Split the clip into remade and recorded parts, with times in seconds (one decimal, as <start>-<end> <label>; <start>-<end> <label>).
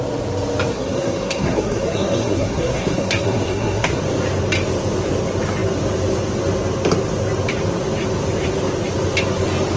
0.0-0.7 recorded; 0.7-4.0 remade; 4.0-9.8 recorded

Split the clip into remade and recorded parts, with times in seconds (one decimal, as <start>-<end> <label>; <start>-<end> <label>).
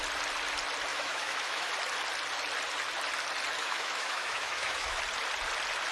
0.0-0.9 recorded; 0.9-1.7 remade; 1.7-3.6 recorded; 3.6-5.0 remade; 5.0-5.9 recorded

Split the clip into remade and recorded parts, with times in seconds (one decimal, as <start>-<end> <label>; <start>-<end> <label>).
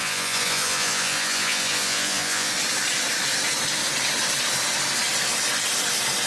0.0-2.5 remade; 2.5-6.3 recorded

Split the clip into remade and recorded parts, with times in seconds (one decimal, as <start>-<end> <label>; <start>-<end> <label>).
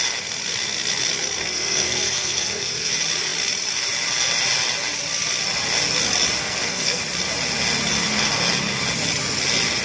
0.0-1.4 recorded; 1.4-2.9 remade; 2.9-6.4 recorded; 6.4-7.0 remade; 7.0-9.8 recorded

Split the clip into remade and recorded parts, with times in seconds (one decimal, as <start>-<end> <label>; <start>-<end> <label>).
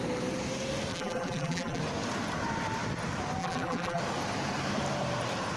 0.0-0.9 recorded; 0.9-1.8 remade; 1.8-3.4 recorded; 3.4-4.0 remade; 4.0-5.6 recorded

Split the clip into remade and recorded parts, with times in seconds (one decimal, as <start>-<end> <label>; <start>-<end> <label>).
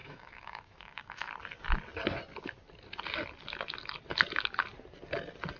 0.0-1.3 remade; 1.3-5.6 recorded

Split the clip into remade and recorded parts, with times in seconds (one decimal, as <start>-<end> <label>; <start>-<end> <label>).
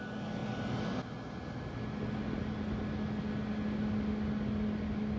0.0-5.2 recorded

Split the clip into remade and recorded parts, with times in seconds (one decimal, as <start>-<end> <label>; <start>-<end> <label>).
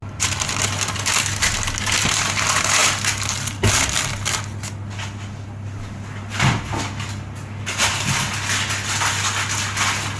0.0-10.2 recorded